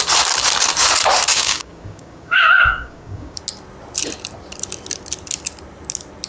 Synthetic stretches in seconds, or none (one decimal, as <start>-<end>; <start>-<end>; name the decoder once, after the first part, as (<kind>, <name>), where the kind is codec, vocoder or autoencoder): 1.3-3.4 (codec, DAC)